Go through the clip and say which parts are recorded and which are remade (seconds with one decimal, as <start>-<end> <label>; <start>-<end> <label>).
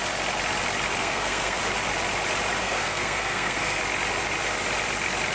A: 0.0-1.0 recorded; 1.0-1.6 remade; 1.6-2.6 recorded; 2.6-3.8 remade; 3.8-5.3 recorded